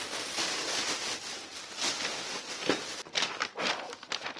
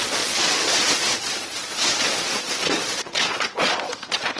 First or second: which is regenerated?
second